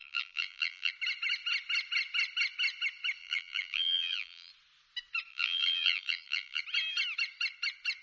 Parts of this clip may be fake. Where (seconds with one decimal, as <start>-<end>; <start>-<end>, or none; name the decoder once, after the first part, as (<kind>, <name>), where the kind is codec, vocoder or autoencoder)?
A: 0.0-0.9 (vocoder, BigVGAN v2); 3.2-4.5; 5.3-6.6